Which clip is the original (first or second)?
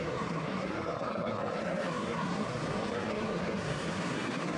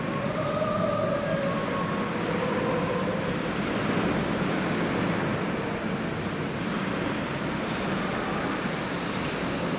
second